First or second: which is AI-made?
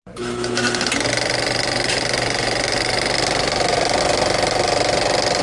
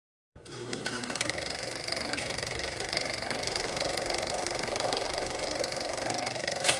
second